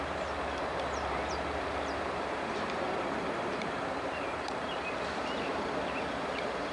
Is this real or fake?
fake